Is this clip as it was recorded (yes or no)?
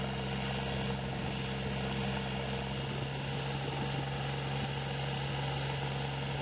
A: yes